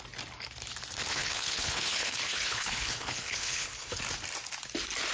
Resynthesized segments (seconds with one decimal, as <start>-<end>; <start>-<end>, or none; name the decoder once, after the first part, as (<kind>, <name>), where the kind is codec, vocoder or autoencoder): 1.1-4.0 (codec, HILCodec)